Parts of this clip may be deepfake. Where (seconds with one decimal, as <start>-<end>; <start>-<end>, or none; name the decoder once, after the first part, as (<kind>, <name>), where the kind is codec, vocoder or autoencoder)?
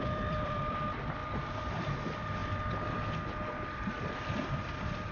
0.0-1.2 (vocoder, BigVGAN v2); 1.7-2.4; 3.6-5.1